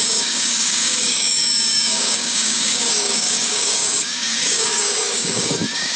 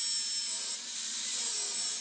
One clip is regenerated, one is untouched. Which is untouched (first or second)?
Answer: second